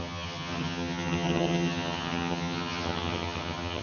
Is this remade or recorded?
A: remade